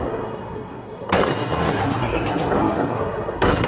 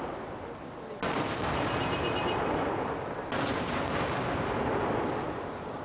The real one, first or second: second